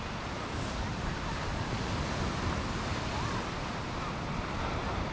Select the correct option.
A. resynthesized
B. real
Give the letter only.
B